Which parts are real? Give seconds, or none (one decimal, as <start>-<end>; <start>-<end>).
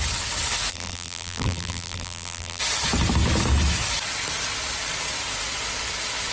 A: 0.0-0.7; 2.6-6.3